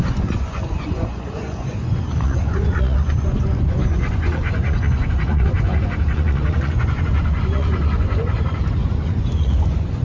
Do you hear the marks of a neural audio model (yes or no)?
yes